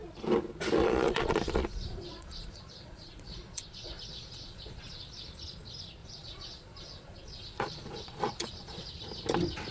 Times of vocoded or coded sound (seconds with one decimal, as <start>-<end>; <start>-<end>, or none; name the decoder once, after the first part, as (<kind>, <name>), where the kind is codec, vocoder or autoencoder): 0.8-5.0 (vocoder, Vocos); 6.0-8.9